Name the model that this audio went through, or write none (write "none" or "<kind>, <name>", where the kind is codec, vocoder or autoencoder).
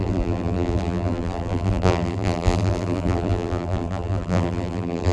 vocoder, BigVGAN v2